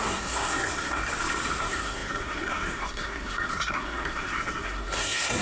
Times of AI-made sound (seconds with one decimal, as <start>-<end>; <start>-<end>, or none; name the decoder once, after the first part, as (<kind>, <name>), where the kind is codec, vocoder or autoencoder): 0.0-1.0 (codec, SNAC); 1.6-5.4